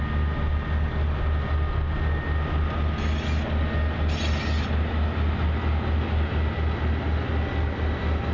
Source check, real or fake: real